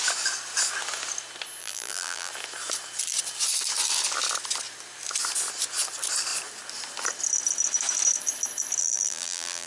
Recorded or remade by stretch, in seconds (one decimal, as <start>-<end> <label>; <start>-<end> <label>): 0.0-1.6 recorded; 1.6-2.3 remade; 2.3-8.8 recorded; 8.8-9.7 remade